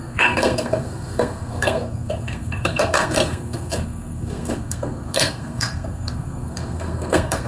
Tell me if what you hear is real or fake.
fake